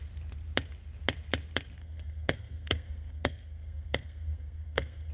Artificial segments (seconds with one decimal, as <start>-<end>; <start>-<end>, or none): 1.8-5.1